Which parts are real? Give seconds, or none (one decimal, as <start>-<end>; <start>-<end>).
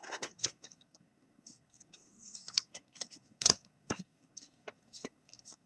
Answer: none